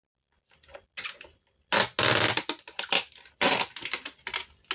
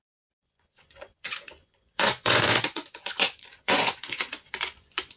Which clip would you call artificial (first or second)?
second